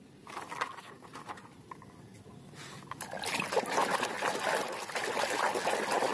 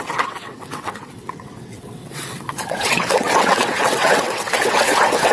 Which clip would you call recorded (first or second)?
first